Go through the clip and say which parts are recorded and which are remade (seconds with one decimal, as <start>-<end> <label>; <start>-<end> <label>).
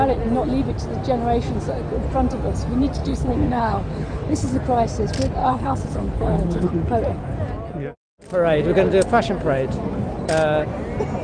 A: 0.0-3.0 recorded; 3.0-4.6 remade; 4.6-5.4 recorded; 5.4-6.7 remade; 6.7-11.2 recorded